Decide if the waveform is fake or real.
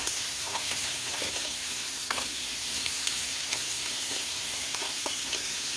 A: fake